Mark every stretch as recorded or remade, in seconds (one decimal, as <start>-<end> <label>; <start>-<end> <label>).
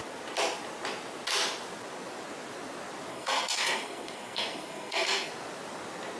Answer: 0.0-3.1 recorded; 3.1-5.3 remade; 5.3-6.2 recorded